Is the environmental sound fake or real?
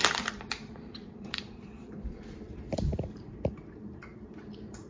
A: fake